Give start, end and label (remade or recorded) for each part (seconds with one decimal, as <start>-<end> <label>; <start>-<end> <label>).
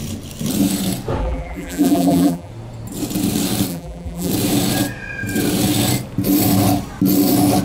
0.0-1.2 recorded; 1.2-2.5 remade; 2.5-3.7 recorded; 3.7-4.3 remade; 4.3-7.6 recorded